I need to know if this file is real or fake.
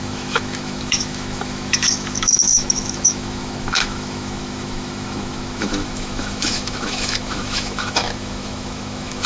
fake